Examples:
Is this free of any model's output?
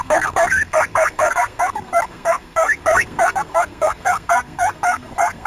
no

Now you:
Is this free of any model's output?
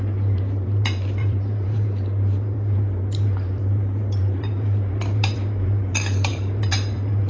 no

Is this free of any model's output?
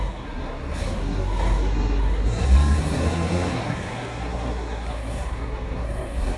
no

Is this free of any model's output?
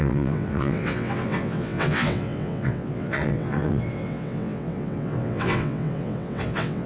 no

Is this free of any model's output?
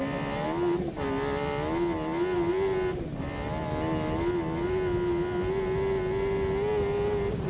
yes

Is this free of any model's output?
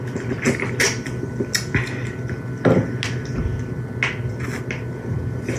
yes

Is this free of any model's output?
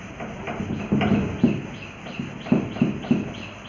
yes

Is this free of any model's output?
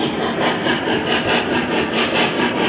yes